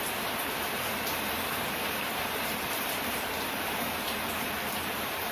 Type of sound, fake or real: fake